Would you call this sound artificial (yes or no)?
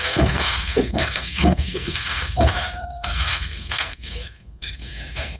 yes